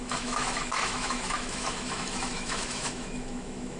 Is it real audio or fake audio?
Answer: fake